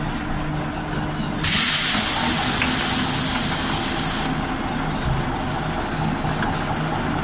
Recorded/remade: recorded